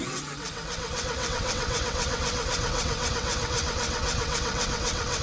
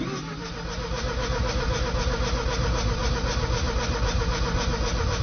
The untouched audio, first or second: second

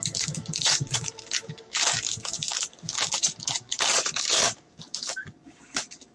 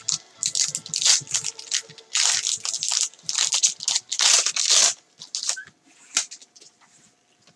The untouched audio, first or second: second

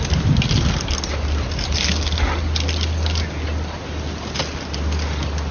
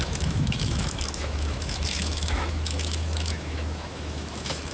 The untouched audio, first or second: first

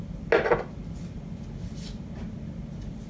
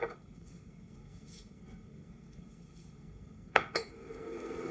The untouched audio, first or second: first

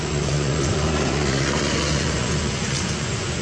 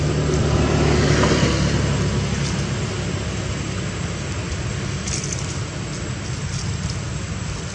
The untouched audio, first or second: second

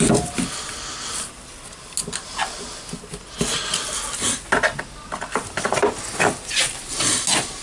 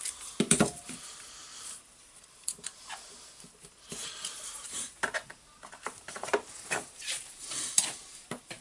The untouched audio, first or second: first